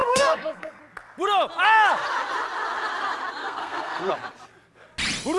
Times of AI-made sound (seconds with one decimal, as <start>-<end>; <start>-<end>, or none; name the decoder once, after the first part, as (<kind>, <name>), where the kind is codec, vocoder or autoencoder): 0.0-0.8 (codec, SNAC); 3.4-4.1